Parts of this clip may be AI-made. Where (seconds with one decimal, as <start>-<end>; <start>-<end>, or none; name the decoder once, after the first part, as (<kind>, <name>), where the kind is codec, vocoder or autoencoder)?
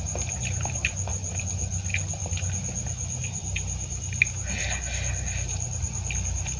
none